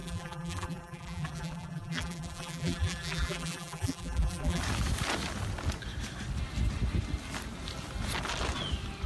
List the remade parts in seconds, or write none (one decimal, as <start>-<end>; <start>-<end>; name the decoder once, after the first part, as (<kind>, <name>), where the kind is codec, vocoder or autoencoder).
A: 0.0-4.6 (vocoder, BigVGAN v2)